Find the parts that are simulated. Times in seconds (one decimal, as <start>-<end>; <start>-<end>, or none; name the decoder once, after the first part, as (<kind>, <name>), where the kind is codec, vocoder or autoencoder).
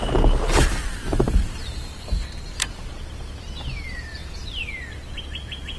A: 1.1-2.7 (vocoder, BigVGAN v2); 4.1-4.7